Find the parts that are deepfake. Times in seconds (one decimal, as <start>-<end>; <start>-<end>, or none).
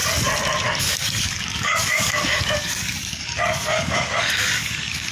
0.8-5.1